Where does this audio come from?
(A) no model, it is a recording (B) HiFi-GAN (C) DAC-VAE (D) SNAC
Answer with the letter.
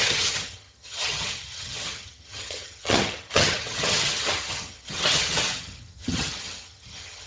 B